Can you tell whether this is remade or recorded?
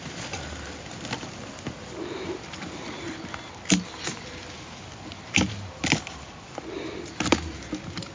recorded